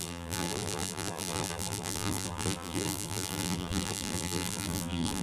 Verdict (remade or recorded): remade